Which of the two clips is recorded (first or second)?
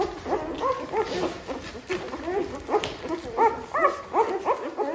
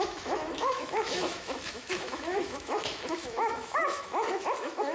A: first